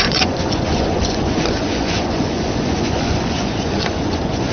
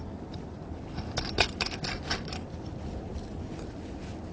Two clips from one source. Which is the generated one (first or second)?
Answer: first